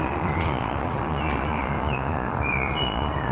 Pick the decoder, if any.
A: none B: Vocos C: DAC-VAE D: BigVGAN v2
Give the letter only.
B